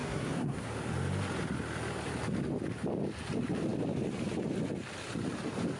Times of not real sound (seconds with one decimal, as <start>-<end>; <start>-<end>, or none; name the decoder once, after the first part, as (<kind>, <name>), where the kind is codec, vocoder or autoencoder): 0.0-0.7 (codec, SNAC)